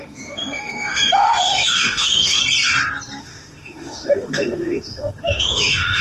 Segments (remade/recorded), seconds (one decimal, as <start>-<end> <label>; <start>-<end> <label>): 0.0-2.4 remade; 2.4-3.2 recorded; 3.2-6.0 remade